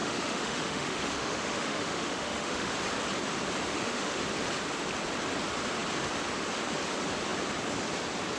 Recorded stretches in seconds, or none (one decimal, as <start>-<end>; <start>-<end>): 2.7-3.7; 4.2-8.4